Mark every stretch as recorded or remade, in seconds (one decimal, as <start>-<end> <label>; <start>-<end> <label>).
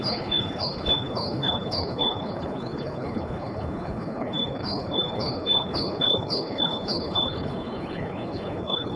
0.0-9.0 remade